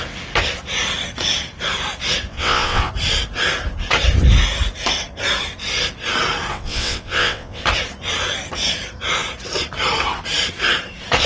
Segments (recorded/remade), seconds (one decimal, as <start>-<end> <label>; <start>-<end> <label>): 0.0-2.3 recorded; 2.3-2.9 remade; 2.9-6.5 recorded; 6.5-7.6 remade; 7.6-11.3 recorded